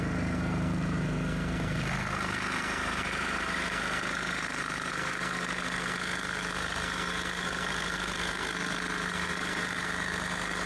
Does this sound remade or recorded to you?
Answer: remade